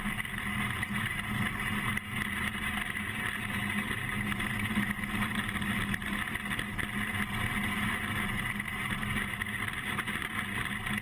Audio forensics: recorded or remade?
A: recorded